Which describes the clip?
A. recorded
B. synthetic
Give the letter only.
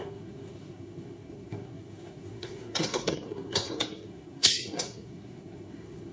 B